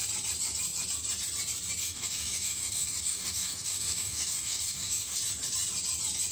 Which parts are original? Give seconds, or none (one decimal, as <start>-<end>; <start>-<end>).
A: 0.0-1.8; 5.2-6.3